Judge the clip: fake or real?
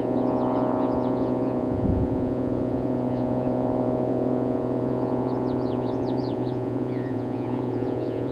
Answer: fake